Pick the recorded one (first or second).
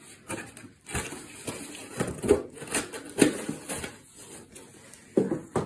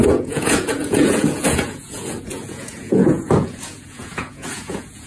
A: first